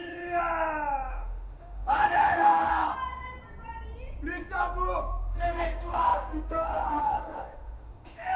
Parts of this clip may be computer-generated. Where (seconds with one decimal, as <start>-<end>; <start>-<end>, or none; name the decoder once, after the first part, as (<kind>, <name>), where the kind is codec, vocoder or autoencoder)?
0.0-0.4 (autoencoder, DAC-VAE); 1.1-2.7; 5.0-8.4